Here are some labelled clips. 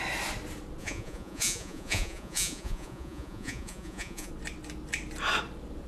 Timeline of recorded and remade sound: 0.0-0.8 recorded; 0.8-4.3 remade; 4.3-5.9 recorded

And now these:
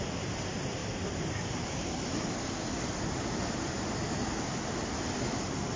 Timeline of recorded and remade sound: 0.0-5.8 recorded

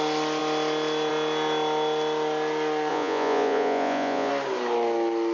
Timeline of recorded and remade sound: 0.0-2.9 recorded; 2.9-4.3 remade; 4.3-5.3 recorded

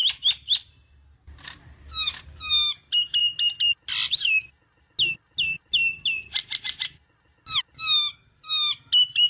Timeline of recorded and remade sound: 0.0-9.3 recorded

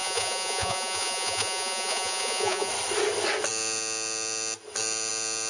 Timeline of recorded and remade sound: 0.0-2.7 remade; 2.7-5.5 recorded

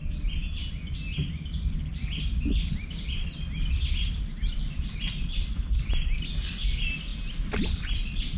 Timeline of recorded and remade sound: 0.0-8.4 recorded